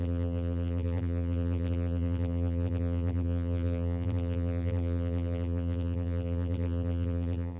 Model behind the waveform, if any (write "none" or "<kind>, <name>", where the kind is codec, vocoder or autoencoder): vocoder, BigVGAN v2